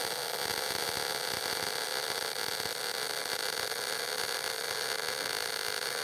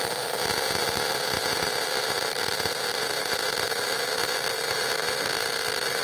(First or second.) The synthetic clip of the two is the second